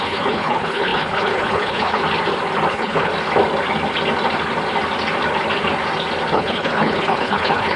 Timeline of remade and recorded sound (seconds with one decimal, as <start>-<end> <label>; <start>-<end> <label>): 0.0-2.0 remade; 2.0-2.7 recorded; 2.7-3.1 remade; 3.1-6.3 recorded; 6.3-7.8 remade